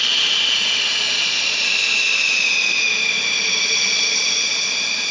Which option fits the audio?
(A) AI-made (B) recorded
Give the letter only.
B